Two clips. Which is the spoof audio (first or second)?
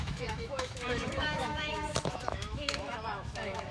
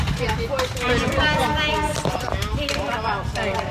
first